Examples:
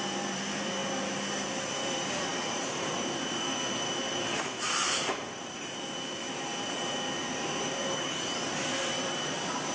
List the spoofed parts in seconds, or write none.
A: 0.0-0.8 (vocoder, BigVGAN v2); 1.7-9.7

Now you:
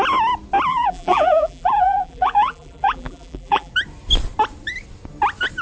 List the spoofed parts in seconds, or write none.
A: 0.7-3.7 (vocoder, BigVGAN v2)

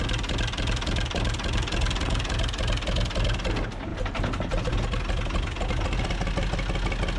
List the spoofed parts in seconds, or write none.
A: none

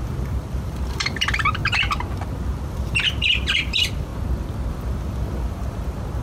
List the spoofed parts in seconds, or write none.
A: 0.0-1.6 (vocoder, BigVGAN v2); 2.4-4.1; 4.7-6.2

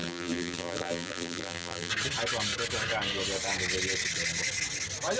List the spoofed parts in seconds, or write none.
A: 0.0-1.9 (vocoder, BigVGAN v2)

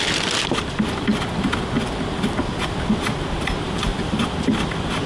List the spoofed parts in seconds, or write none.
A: 0.0-1.1 (vocoder, BigVGAN v2); 2.8-3.9; 4.6-5.1

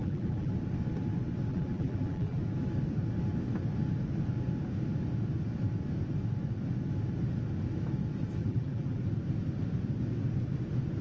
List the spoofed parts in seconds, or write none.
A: 0.0-0.5 (vocoder, BigVGAN v2); 1.5-2.4; 8.4-9.0

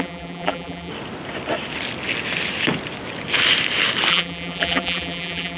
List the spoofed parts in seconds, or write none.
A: 0.0-0.9 (vocoder, BigVGAN v2); 4.1-5.6